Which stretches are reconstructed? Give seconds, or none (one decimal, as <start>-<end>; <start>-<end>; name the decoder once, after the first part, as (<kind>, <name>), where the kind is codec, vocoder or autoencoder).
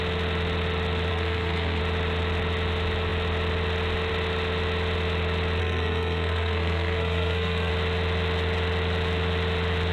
1.1-1.8 (codec, SNAC); 5.6-7.7